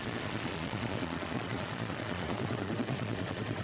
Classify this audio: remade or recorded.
remade